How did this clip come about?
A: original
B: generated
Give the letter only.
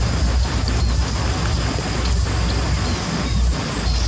A